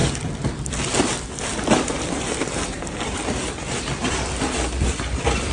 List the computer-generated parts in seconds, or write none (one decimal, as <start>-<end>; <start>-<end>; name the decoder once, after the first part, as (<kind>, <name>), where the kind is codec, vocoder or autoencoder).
0.0-5.5 (vocoder, BigVGAN v2)